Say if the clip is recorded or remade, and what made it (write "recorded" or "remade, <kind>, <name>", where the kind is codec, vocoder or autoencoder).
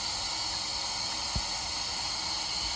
recorded